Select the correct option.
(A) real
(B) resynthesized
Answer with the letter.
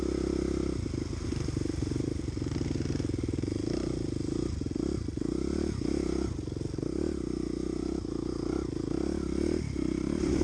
A